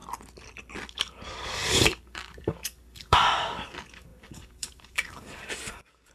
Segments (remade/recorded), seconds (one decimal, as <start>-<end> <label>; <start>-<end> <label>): 0.0-0.9 recorded; 0.9-6.1 remade